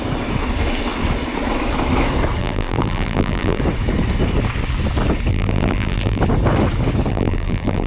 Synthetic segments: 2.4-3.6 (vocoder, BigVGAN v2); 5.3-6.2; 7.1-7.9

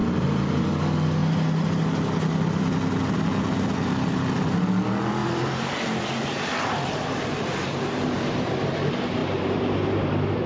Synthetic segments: 0.0-0.7 (vocoder, BigVGAN v2); 5.2-8.6; 9.2-10.1

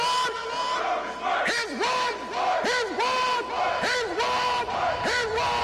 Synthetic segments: none

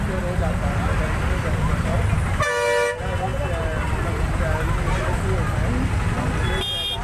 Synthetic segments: none

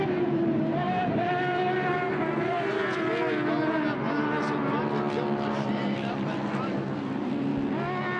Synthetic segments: 0.0-2.8 (vocoder, BigVGAN v2); 5.7-7.5